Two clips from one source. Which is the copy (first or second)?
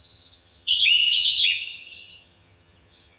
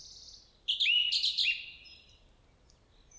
first